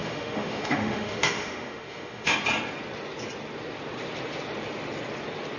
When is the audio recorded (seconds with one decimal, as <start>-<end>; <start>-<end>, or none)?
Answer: 2.4-5.6